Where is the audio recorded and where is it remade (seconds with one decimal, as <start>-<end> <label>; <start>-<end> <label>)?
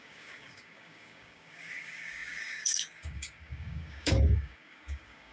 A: 0.0-5.3 remade